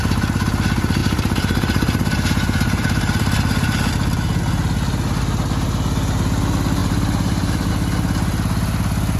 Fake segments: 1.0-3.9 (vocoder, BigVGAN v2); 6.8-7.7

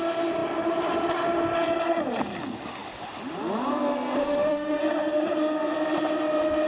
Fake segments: 4.2-4.8 (autoencoder, DAC-VAE)

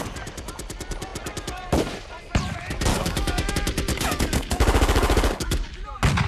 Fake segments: 2.9-3.5 (codec, DAC); 3.9-5.7

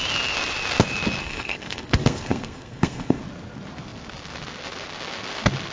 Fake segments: 1.2-3.2 (codec, SNAC)

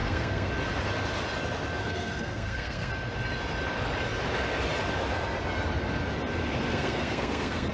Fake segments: 0.0-0.5 (codec, SNAC); 1.8-2.9; 6.7-7.7